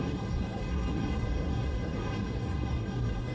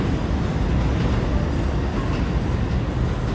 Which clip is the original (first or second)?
second